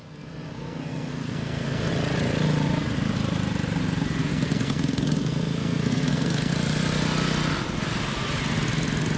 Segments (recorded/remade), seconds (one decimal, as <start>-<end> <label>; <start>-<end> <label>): 0.0-1.9 remade; 1.9-4.2 recorded; 4.2-6.5 remade; 6.5-9.2 recorded